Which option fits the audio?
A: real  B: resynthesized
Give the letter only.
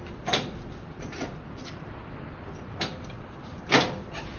A